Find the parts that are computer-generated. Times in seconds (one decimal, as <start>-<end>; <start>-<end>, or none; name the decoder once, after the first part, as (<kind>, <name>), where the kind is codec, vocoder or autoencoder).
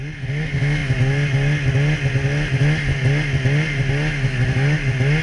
none